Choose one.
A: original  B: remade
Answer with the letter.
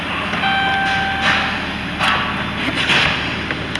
A